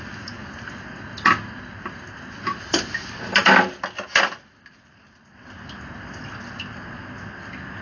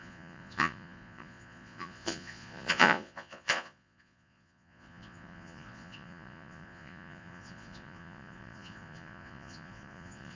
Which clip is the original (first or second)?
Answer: first